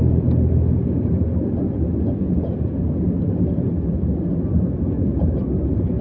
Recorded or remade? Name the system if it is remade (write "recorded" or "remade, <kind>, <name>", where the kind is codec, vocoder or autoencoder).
recorded